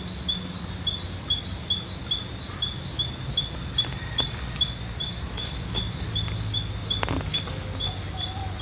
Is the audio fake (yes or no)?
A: no